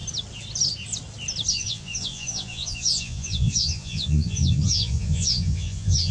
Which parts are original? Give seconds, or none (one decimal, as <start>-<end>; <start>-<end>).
0.0-1.5